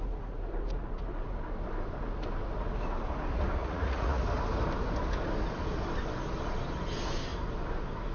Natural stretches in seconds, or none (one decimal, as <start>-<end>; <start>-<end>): 0.0-3.6; 4.2-8.1